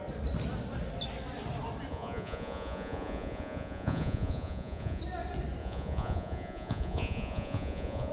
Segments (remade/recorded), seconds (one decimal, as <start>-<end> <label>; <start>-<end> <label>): 0.0-1.9 recorded; 1.9-5.0 remade; 5.0-5.6 recorded; 5.6-8.1 remade